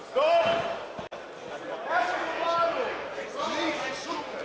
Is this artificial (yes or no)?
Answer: no